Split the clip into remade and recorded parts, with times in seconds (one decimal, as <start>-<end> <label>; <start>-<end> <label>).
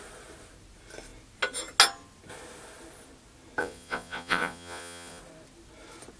0.0-3.6 recorded; 3.6-5.2 remade; 5.2-6.2 recorded